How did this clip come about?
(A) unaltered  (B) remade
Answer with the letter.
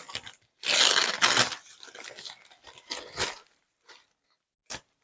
A